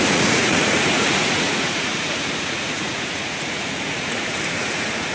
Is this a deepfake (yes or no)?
yes